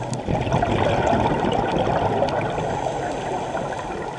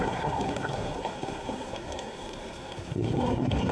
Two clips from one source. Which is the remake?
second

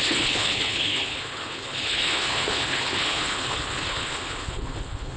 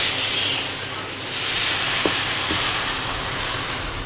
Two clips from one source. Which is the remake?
first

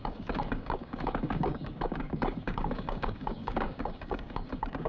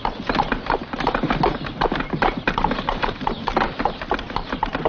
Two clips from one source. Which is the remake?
first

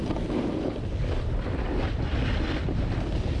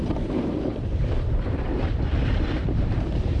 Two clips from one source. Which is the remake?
second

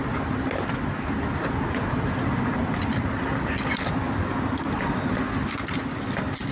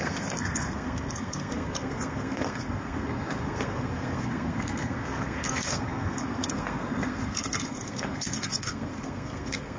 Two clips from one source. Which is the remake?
second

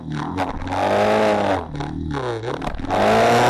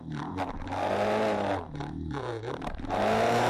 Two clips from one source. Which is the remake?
second